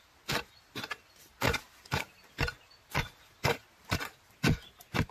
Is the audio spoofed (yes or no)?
no